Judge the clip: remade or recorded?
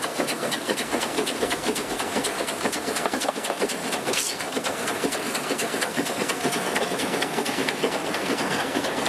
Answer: remade